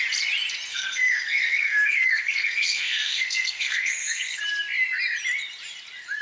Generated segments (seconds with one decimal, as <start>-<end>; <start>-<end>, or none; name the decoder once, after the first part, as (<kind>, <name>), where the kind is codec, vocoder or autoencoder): 0.7-4.4 (codec, SNAC)